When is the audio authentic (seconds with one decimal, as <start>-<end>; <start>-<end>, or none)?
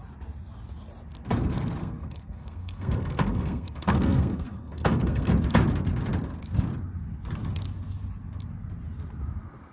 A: 0.0-1.8; 5.3-9.7